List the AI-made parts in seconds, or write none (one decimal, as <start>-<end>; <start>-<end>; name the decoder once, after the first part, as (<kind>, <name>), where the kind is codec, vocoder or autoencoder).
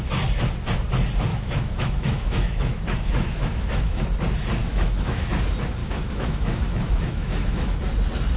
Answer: 1.3-4.0 (autoencoder, DAC-VAE); 4.6-5.3; 5.8-7.8